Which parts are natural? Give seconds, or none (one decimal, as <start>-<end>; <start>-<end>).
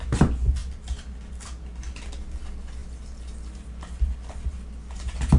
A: 0.0-5.4